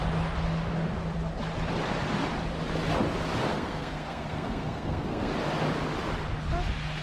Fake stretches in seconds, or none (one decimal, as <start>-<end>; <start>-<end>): 3.5-5.3